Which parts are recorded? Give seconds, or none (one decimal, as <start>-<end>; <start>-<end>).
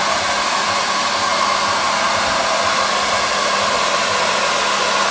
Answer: 0.0-5.1